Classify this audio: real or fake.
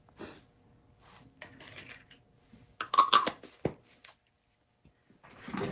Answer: real